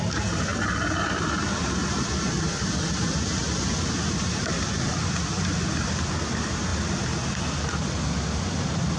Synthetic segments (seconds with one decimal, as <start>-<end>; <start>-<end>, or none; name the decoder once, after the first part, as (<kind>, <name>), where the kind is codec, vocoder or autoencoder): none